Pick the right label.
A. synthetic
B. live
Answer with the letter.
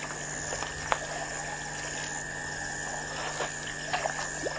B